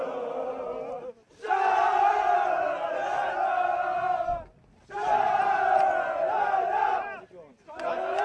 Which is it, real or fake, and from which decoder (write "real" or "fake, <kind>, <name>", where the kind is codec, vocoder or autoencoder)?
real